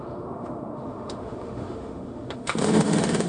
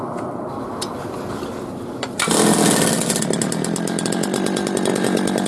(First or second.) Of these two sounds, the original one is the second